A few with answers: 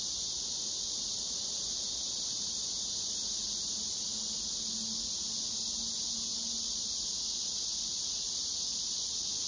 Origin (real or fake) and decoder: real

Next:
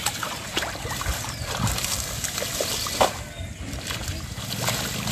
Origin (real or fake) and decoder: real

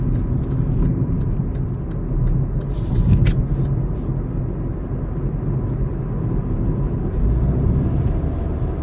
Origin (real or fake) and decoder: real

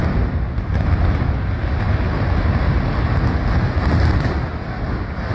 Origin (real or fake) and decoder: real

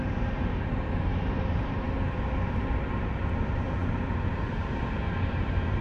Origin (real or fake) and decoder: fake, vocoder, BigVGAN v2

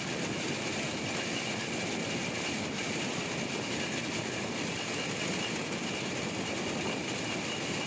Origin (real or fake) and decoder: real